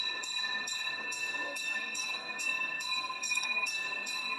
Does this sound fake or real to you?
fake